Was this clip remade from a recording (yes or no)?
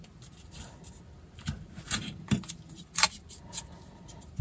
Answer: no